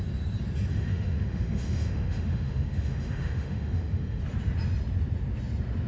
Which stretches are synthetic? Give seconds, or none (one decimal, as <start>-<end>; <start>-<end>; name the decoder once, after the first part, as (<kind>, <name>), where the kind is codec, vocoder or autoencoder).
0.7-4.2 (autoencoder, DAC-VAE)